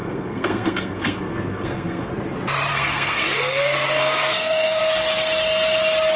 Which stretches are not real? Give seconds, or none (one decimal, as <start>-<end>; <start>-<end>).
0.0-2.1; 2.7-4.8